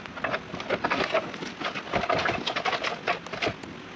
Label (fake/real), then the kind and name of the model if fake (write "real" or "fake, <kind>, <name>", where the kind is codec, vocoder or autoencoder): real